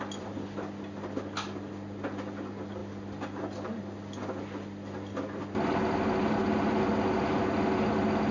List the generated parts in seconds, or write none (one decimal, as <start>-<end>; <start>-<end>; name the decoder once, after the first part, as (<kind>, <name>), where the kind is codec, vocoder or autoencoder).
none